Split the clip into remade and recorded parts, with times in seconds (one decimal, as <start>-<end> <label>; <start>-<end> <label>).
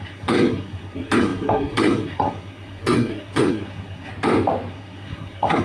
0.0-4.1 remade; 4.1-4.7 recorded; 4.7-5.6 remade